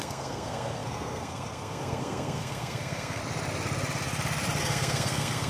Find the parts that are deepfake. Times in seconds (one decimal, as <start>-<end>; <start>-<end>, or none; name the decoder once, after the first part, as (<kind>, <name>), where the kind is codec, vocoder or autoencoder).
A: 0.0-3.2 (codec, SNAC); 4.6-5.5

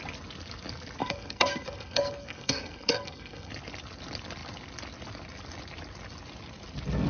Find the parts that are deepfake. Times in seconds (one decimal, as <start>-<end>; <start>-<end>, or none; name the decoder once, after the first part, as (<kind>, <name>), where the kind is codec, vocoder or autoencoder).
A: 1.0-3.5 (codec, SNAC)

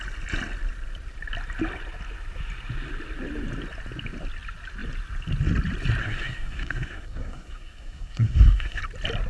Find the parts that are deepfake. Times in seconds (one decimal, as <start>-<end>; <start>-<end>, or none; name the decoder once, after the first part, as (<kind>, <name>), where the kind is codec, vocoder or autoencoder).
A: 6.0-8.8 (codec, SNAC)

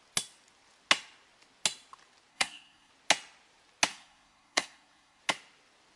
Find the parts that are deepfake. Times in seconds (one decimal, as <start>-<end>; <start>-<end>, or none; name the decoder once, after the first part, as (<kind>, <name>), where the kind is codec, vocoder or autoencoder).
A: 2.3-2.9 (codec, SNAC); 3.9-5.2

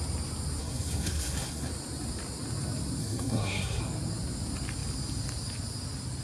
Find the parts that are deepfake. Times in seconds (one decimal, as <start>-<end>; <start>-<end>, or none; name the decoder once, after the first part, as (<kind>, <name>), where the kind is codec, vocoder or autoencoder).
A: 0.6-1.7 (codec, SNAC); 3.0-3.8

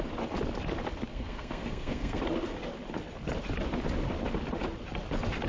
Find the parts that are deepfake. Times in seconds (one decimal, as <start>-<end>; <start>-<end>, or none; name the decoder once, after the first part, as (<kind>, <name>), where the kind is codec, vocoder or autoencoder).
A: 1.1-2.2 (codec, SNAC)

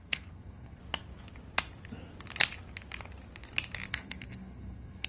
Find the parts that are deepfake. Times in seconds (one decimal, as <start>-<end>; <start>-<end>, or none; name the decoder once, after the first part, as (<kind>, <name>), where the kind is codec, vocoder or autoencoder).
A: 0.0-0.8 (codec, SNAC); 3.9-5.1